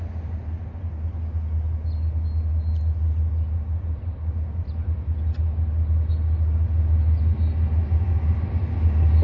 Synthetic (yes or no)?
no